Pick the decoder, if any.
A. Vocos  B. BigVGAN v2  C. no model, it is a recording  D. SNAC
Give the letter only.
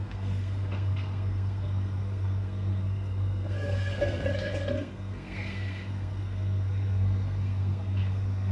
D